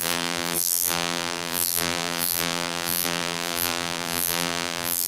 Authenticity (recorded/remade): remade